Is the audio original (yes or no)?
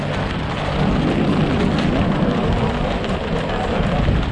yes